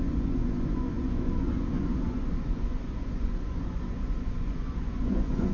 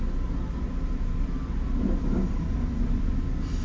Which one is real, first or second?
second